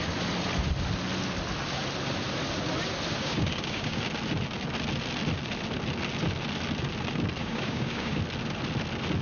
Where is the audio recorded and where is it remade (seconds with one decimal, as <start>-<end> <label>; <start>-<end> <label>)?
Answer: 0.0-3.2 recorded; 3.2-4.0 remade; 4.0-7.4 recorded; 7.4-8.2 remade; 8.2-9.2 recorded